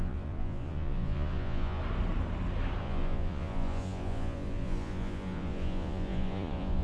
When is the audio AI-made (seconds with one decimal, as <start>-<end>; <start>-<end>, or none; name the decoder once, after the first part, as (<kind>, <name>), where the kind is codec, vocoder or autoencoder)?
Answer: 0.0-1.8 (vocoder, Vocos); 2.8-6.8